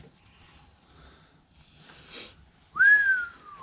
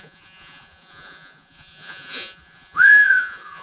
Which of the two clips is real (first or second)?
first